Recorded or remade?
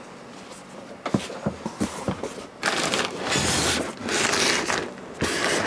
recorded